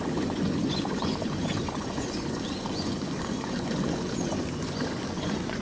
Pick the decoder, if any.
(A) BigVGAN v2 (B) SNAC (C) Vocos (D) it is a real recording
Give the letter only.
C